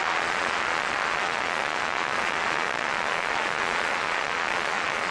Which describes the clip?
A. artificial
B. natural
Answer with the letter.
A